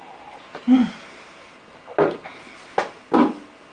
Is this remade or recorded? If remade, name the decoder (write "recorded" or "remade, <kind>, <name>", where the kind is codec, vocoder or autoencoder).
recorded